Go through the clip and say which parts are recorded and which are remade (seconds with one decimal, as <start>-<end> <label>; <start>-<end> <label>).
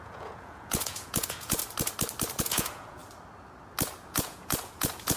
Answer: 0.0-1.6 remade; 1.6-2.4 recorded; 2.4-3.0 remade; 3.0-4.0 recorded; 4.0-5.2 remade